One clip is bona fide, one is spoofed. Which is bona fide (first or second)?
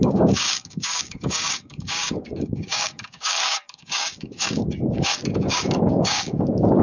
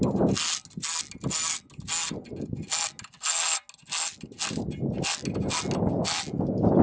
second